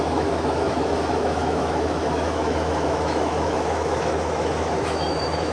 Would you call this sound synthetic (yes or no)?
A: yes